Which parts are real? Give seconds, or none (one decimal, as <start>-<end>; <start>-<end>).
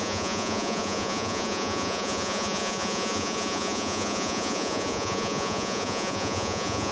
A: none